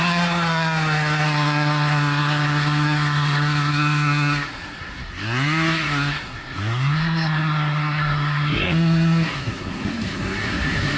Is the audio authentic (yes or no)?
no